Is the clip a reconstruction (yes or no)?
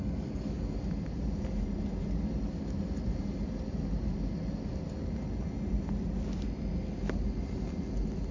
no